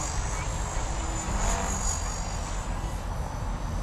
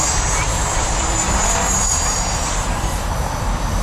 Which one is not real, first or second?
second